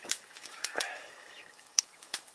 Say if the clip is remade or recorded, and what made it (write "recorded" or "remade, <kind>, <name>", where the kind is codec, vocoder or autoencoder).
remade, autoencoder, DAC-VAE